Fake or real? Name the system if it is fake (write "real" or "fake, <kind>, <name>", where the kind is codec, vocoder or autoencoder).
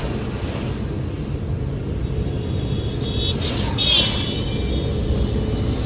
real